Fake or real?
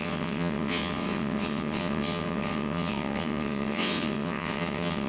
fake